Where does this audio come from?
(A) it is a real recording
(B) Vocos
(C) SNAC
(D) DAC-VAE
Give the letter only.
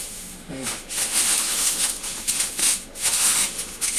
D